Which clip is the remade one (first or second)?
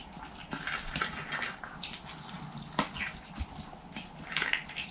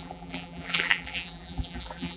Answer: second